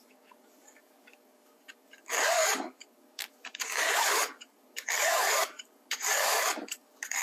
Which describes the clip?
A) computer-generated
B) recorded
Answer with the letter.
A